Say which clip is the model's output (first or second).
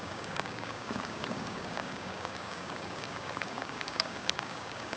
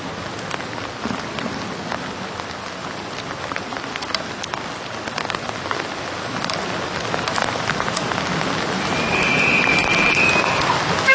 first